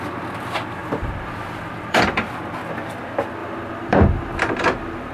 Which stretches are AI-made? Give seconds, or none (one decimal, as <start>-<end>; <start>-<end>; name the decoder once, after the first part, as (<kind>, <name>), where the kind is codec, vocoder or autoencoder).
0.8-2.3 (vocoder, BigVGAN v2); 3.4-5.1